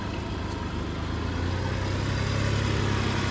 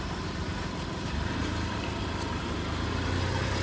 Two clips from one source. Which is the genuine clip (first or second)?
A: first